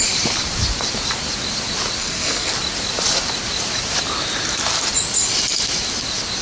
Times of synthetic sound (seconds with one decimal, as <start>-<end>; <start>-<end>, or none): 2.0-2.5

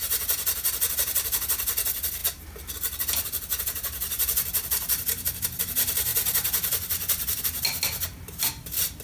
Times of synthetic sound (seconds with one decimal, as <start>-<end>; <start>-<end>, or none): 6.1-7.4

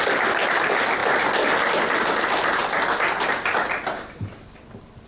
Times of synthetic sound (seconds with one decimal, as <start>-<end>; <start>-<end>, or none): none